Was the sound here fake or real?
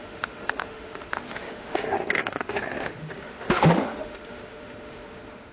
fake